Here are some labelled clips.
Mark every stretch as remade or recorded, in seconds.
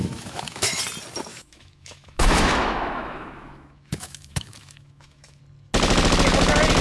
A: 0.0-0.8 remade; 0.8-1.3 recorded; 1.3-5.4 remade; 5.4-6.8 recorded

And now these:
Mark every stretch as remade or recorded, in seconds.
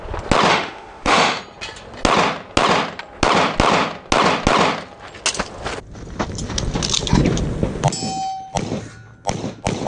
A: 0.0-0.5 recorded; 0.5-1.4 remade; 1.4-9.9 recorded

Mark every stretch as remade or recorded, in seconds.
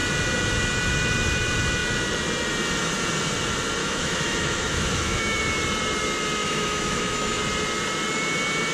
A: 0.0-3.8 recorded; 3.8-5.4 remade; 5.4-6.4 recorded; 6.4-7.4 remade; 7.4-8.7 recorded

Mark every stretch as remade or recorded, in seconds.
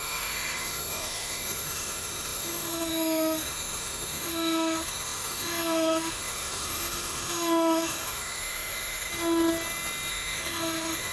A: 0.0-9.1 remade; 9.1-10.1 recorded; 10.1-11.1 remade